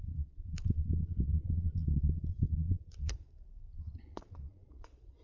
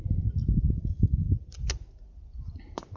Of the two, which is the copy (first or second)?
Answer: first